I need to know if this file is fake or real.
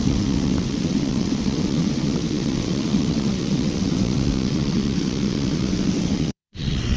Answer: fake